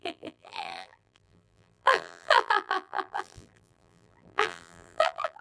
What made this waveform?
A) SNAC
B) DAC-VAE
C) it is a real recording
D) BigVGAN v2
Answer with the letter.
D